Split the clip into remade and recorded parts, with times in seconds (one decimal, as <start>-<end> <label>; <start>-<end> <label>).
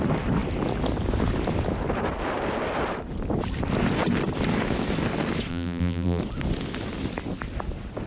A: 0.0-5.5 recorded; 5.5-6.2 remade; 6.2-8.1 recorded